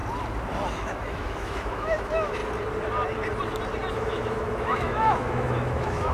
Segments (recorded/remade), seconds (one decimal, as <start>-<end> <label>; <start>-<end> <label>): 0.0-0.7 recorded; 0.7-2.4 remade; 2.4-3.9 recorded; 3.9-6.1 remade